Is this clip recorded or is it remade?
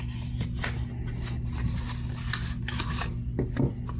recorded